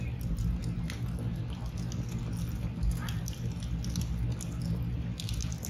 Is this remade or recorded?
recorded